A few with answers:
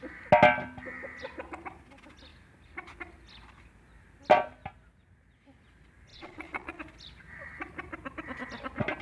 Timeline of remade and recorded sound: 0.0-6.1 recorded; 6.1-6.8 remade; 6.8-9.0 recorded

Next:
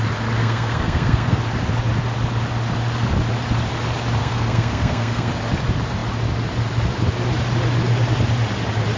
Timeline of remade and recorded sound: 0.0-0.4 recorded; 0.4-1.4 remade; 1.4-4.2 recorded; 4.2-5.3 remade; 5.3-9.0 recorded